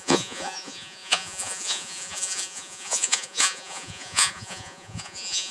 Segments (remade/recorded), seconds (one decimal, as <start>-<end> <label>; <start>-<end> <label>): 0.0-5.5 remade